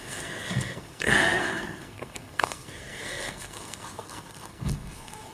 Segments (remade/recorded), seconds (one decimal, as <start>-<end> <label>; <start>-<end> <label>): 0.0-5.3 remade